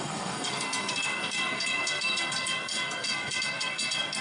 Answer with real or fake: fake